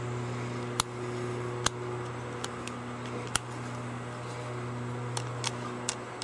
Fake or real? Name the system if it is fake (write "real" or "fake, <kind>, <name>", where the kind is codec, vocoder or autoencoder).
real